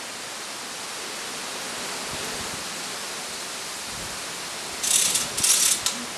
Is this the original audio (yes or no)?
yes